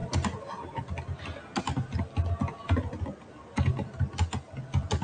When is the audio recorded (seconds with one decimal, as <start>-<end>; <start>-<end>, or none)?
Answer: 0.0-5.0